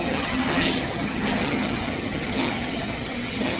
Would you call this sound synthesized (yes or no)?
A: yes